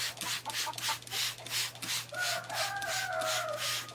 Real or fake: real